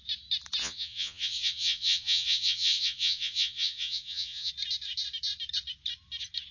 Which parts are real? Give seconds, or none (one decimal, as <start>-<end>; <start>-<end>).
0.0-0.6; 4.5-6.5